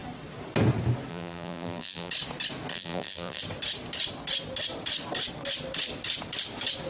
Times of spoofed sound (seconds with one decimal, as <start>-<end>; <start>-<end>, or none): 1.1-2.1; 2.7-3.4